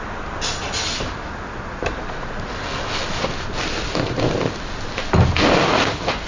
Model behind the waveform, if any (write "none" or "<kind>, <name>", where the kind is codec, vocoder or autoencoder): none